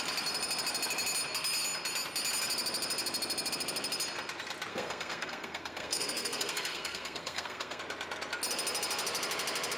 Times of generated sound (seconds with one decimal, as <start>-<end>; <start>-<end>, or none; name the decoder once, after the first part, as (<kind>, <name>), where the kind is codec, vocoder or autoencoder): 4.7-7.8 (codec, SNAC)